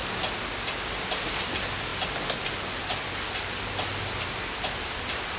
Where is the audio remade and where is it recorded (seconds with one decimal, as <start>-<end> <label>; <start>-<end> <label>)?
0.0-5.4 recorded